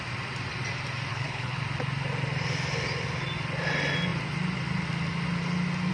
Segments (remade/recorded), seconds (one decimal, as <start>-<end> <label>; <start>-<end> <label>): 0.0-1.1 recorded; 1.1-1.6 remade; 1.6-5.9 recorded